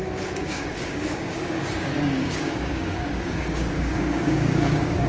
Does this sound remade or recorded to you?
remade